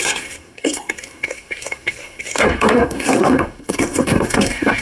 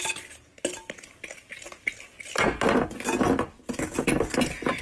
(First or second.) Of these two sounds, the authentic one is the second